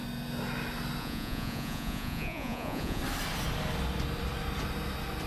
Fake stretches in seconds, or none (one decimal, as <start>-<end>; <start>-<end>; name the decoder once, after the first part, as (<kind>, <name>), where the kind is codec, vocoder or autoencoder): 1.0-3.0 (vocoder, Vocos)